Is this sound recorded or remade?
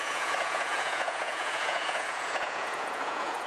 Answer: remade